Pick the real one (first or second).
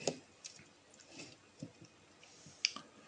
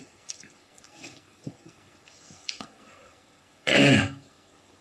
first